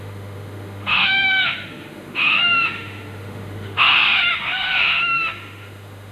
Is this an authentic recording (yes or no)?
no